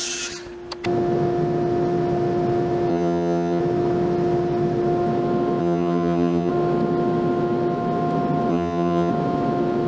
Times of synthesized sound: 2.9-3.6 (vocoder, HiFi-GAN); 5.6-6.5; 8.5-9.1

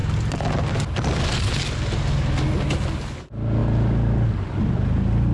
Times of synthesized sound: none

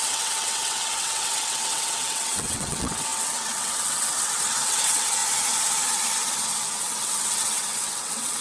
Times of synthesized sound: 0.0-5.2 (vocoder, WaveNeXt); 6.8-8.4

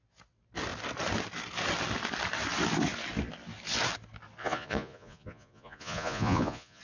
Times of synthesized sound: 4.4-6.8 (vocoder, Vocos)